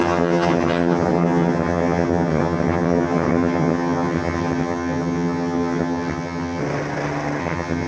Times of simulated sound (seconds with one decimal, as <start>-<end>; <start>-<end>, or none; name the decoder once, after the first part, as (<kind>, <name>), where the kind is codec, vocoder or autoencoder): 0.0-6.6 (vocoder, HiFi-GAN); 7.4-7.9